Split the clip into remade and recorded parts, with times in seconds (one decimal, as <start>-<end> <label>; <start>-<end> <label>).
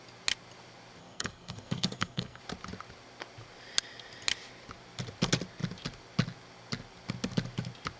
0.0-1.0 recorded; 1.0-2.4 remade; 2.4-8.0 recorded